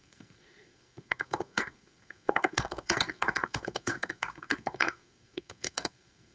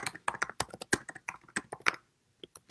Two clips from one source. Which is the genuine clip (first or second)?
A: second